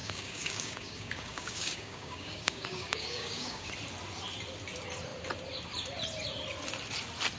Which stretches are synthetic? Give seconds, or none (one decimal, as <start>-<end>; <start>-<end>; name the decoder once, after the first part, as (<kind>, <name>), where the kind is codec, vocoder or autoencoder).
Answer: 0.0-3.7 (codec, DAC)